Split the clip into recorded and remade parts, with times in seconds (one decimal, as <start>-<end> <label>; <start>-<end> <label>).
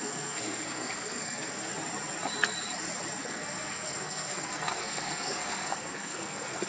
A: 0.0-1.7 remade; 1.7-3.2 recorded; 3.2-6.7 remade